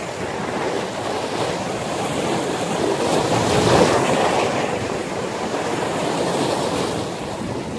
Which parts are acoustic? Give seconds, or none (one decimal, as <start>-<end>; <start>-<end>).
0.0-7.8

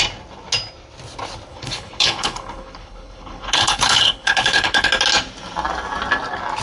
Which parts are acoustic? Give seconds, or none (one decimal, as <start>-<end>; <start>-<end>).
0.0-1.5; 4.9-6.6

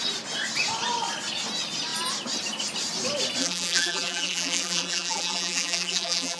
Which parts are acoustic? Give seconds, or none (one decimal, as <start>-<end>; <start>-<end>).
0.0-3.4

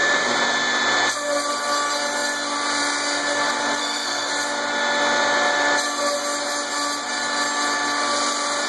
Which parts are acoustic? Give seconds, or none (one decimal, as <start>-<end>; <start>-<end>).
0.0-3.8; 4.3-8.7

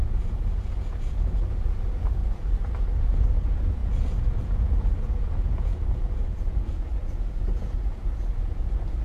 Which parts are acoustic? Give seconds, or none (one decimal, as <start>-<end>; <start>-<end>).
2.2-3.1

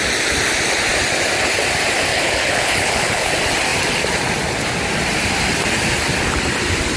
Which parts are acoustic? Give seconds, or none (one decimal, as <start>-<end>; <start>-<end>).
0.0-2.1; 3.3-7.0